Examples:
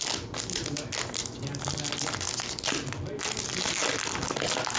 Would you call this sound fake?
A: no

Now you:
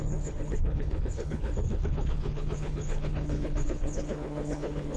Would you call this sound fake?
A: yes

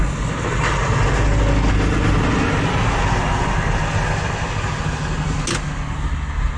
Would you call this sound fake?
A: no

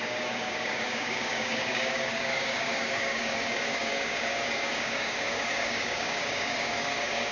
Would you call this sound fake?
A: yes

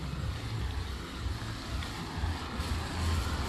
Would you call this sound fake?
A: no